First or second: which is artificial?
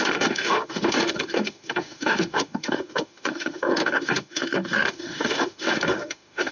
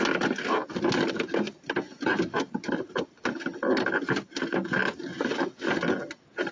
first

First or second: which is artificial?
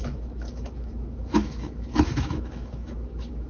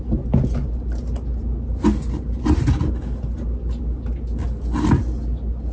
first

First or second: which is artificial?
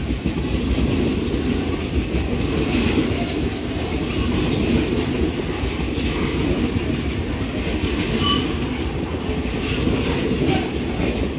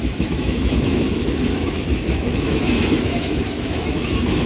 second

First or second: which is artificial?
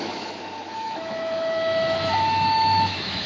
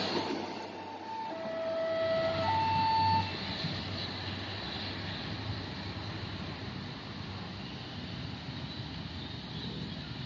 first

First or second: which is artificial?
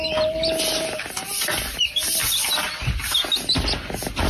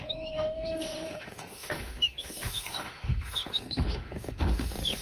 second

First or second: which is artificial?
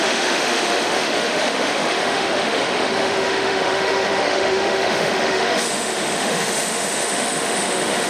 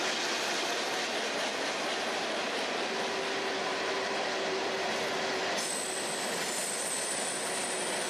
first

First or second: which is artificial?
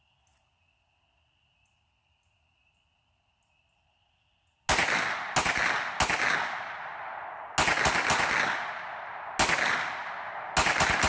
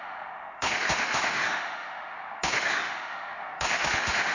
second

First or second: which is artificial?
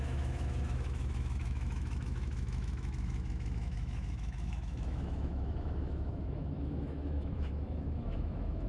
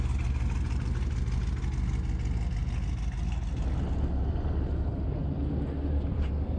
first